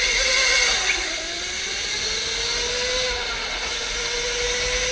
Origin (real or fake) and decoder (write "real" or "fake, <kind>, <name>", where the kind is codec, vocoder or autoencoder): real